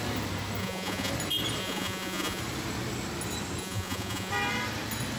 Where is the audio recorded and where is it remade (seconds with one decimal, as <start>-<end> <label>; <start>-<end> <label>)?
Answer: 0.0-0.6 recorded; 0.6-1.1 remade; 1.1-1.6 recorded; 1.6-2.4 remade; 2.4-3.6 recorded; 3.6-4.3 remade; 4.3-5.2 recorded